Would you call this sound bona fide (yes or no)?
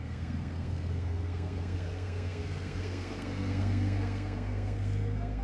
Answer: no